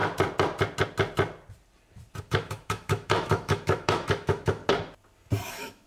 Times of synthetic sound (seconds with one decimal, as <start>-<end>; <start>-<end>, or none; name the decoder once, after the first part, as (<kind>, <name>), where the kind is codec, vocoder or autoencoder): 2.2-4.6 (autoencoder, DAC-VAE); 5.5-5.9